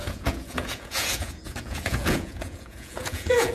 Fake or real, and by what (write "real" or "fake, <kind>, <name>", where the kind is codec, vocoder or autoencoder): fake, vocoder, Vocos